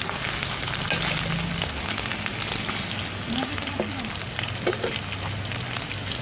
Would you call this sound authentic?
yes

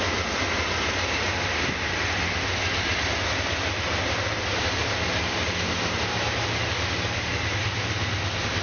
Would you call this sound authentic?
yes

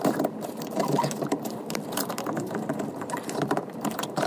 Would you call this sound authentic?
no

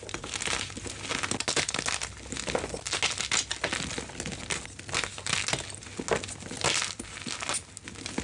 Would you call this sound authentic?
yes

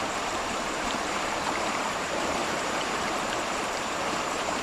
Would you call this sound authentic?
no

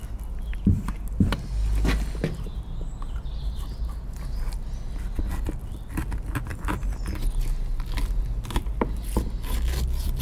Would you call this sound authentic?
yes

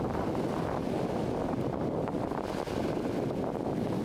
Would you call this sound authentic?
yes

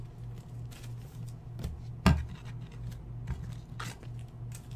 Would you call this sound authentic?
yes